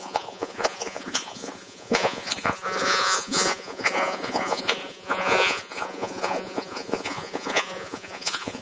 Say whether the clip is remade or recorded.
remade